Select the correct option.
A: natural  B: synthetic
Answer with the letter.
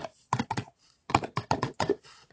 B